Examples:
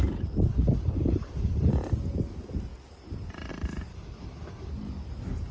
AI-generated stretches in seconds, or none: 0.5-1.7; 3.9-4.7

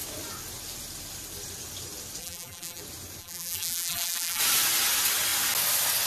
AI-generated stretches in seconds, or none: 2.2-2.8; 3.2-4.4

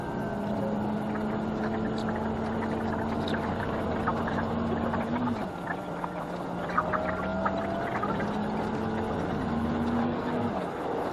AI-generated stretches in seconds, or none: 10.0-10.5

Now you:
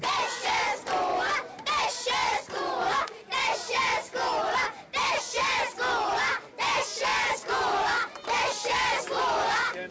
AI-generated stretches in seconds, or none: 2.2-3.8

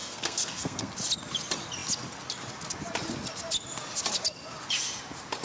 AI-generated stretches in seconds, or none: 0.0-0.9